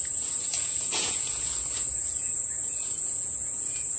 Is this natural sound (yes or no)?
no